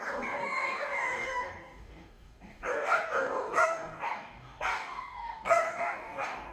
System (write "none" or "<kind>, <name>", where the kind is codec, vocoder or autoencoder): codec, DAC